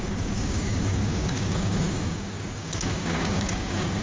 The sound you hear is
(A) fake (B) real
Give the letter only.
A